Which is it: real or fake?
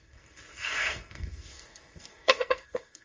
fake